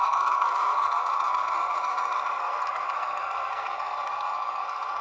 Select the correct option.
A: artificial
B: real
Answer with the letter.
A